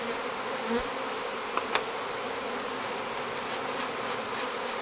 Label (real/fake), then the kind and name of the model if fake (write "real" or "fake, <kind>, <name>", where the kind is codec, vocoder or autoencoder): real